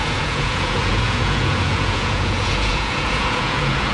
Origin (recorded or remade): remade